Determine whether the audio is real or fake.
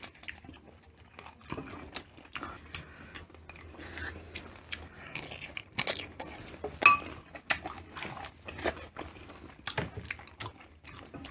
real